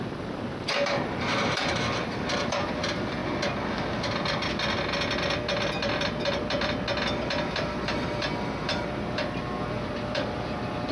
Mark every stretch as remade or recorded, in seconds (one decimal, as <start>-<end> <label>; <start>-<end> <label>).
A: 0.0-3.2 remade; 3.2-7.5 recorded; 7.5-10.9 remade